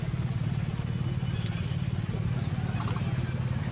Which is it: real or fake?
real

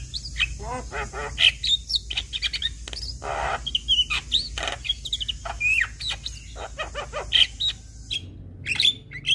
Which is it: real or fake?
real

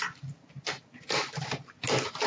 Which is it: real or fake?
real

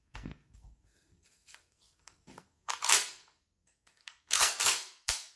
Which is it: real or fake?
fake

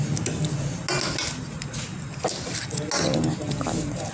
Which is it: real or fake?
real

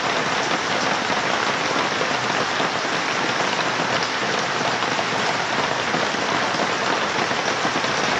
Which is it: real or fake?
real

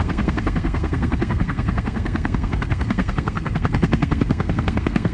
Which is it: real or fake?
fake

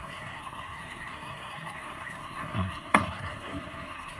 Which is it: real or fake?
fake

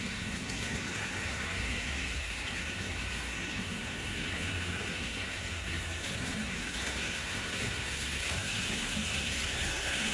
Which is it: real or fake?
fake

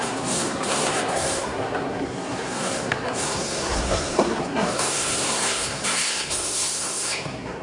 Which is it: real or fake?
fake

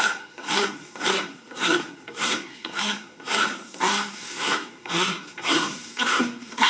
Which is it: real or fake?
fake